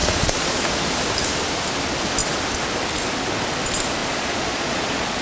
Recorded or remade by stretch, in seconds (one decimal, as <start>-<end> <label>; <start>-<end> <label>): 0.0-0.7 remade; 0.7-4.0 recorded; 4.0-5.2 remade